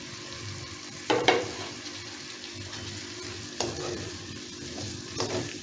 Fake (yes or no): yes